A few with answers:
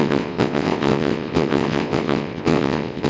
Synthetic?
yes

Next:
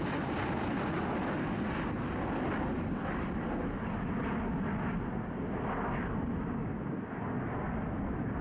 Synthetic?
no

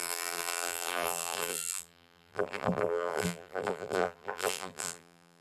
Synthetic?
yes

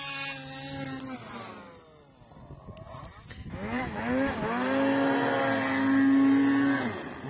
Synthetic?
no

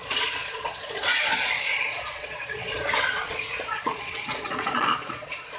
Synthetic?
yes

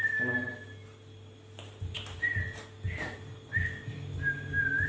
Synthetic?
no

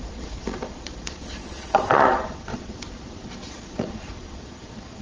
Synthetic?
yes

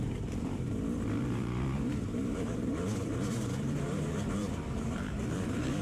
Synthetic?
yes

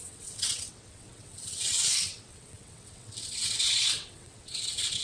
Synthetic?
yes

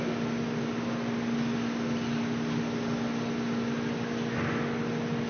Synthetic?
no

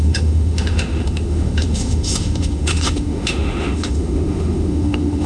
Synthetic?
yes